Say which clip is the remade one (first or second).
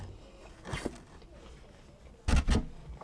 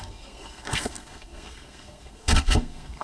second